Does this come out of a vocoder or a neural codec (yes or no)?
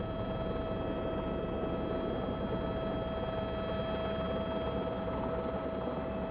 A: no